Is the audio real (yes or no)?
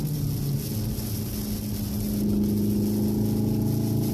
yes